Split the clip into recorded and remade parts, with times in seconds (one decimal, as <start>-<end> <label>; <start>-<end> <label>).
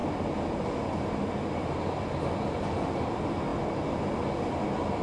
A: 0.0-5.0 recorded